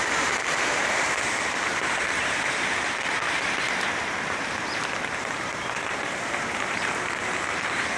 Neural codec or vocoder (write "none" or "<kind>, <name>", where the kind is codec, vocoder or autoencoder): vocoder, BigVGAN v2